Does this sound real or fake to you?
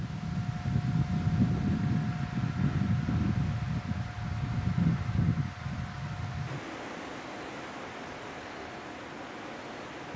real